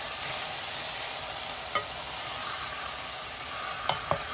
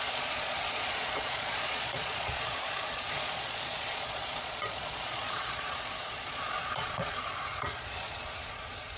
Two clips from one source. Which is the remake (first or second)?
second